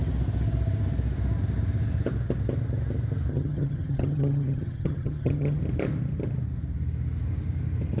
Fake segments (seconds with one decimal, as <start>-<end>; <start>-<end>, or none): 3.3-5.6